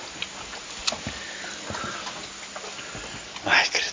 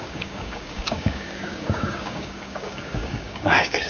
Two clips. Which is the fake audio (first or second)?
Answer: second